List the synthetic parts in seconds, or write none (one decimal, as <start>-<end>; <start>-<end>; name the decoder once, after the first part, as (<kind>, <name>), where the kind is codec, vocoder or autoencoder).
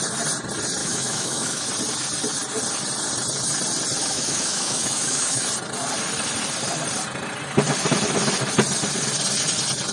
0.8-1.7 (autoencoder, DAC-VAE); 4.0-5.5